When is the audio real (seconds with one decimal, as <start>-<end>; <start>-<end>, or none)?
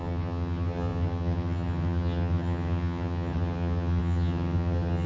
none